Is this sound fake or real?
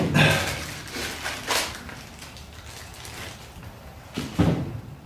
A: real